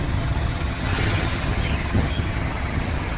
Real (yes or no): no